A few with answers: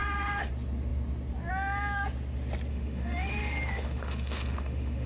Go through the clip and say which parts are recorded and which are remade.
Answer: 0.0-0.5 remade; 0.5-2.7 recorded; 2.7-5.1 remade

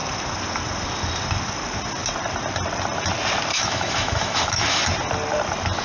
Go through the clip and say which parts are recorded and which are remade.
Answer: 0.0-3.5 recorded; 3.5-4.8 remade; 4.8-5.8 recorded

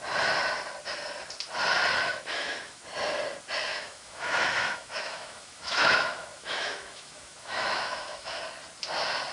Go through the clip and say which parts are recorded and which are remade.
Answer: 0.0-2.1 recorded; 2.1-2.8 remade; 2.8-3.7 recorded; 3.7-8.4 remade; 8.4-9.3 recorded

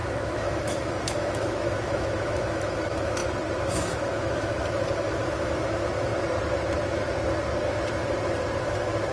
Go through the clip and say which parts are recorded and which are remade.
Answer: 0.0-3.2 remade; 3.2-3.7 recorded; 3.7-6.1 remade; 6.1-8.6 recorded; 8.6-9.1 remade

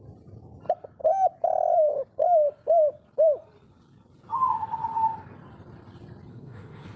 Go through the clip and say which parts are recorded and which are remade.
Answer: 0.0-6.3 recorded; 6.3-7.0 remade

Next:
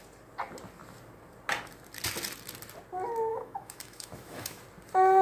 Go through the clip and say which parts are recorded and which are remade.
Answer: 0.0-3.3 recorded; 3.3-4.6 remade; 4.6-5.2 recorded

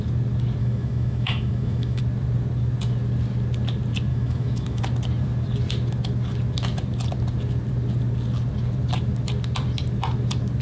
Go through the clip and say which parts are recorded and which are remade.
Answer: 0.0-0.6 recorded; 0.6-2.0 remade; 2.0-4.1 recorded; 4.1-4.8 remade; 4.8-10.6 recorded